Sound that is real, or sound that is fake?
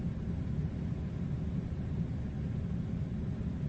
real